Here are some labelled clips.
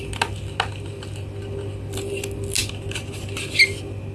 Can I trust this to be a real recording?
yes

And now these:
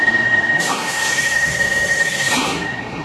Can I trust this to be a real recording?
no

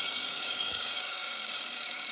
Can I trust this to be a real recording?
no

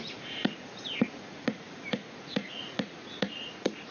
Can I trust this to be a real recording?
no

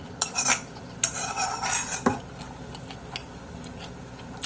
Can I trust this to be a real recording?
yes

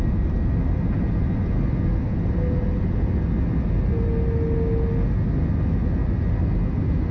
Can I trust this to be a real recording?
yes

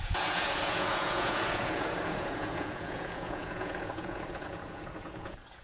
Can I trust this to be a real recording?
no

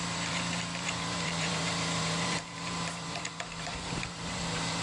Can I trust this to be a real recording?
no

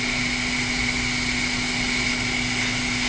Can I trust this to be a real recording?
yes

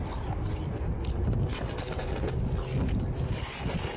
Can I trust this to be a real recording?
yes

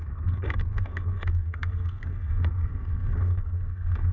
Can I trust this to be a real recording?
no